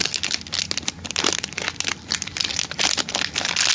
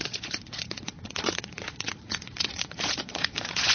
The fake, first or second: second